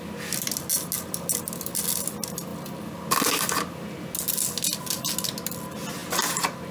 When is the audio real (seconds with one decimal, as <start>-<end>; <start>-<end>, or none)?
0.0-6.7